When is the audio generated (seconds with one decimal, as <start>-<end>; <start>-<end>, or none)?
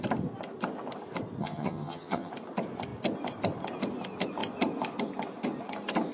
1.4-2.3